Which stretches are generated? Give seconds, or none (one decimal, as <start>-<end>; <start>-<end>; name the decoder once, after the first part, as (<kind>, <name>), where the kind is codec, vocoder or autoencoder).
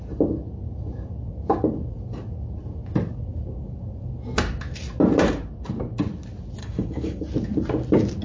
6.6-7.2 (codec, DAC)